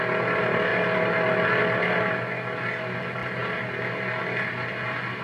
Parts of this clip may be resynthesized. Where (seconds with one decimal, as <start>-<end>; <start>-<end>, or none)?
none